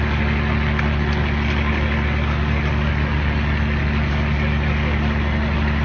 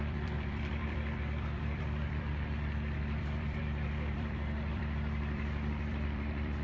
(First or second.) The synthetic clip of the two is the second